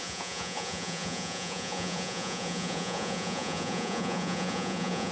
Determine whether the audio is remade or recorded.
remade